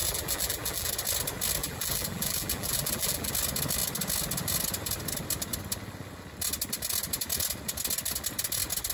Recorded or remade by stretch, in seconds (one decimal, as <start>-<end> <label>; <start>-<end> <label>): 0.0-0.9 remade; 0.9-1.6 recorded; 1.6-3.3 remade; 3.3-8.9 recorded